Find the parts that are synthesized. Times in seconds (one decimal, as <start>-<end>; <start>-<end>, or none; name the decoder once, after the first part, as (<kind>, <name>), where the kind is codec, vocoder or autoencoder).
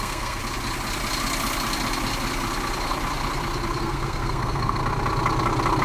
0.0-0.4 (codec, SNAC); 3.8-4.8